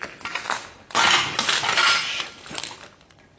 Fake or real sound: real